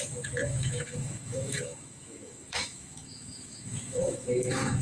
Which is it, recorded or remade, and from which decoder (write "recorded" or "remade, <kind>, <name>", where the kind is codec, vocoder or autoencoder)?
remade, autoencoder, DAC-VAE